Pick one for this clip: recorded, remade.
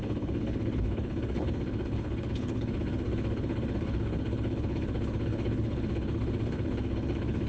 remade